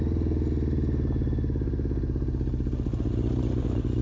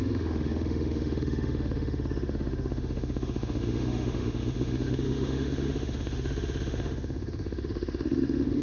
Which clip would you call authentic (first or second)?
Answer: first